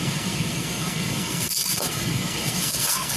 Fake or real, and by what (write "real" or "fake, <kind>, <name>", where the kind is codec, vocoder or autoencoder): fake, codec, SNAC